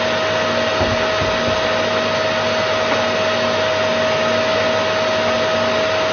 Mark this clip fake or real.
real